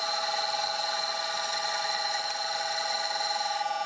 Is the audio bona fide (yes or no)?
yes